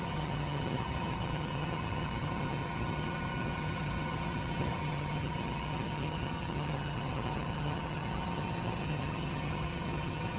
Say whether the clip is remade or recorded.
remade